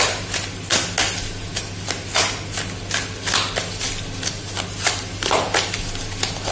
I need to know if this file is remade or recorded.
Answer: recorded